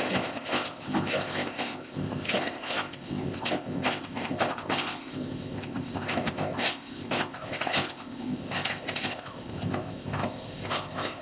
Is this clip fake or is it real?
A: fake